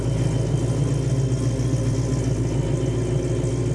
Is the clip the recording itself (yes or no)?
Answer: yes